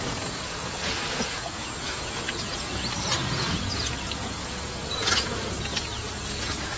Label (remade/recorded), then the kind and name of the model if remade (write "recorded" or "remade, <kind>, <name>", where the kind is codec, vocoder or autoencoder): remade, vocoder, Vocos